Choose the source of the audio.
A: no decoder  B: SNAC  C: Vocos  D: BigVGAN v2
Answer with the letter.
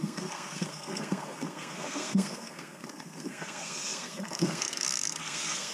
B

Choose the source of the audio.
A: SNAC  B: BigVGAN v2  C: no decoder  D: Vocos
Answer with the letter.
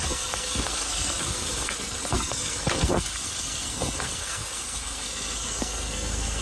A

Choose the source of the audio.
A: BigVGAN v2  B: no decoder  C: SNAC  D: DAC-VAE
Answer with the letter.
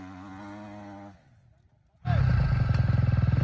B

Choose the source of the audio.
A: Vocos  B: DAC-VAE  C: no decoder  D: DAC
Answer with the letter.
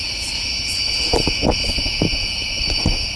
A